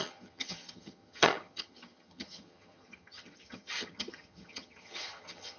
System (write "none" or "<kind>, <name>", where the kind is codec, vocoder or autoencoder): vocoder, HiFi-GAN